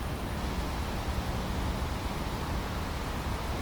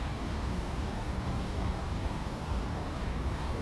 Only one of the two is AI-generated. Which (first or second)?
second